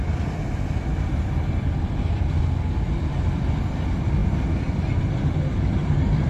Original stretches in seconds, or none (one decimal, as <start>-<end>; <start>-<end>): 0.0-6.3